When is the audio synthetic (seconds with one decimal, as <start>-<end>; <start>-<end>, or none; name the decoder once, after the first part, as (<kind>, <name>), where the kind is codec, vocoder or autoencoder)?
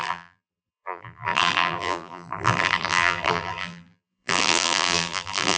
0.0-5.6 (vocoder, BigVGAN v2)